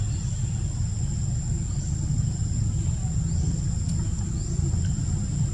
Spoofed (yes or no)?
no